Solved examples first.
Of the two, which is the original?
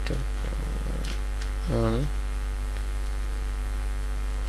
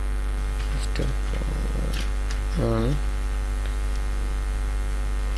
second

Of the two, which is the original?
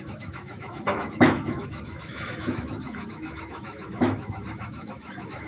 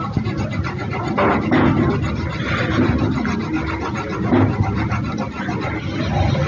second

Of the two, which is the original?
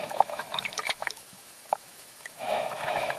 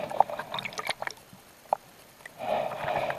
second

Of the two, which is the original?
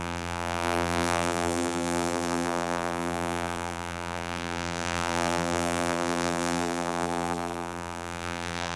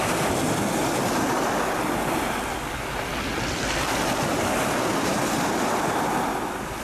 second